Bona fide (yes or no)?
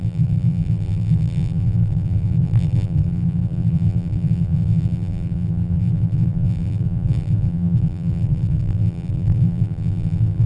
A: no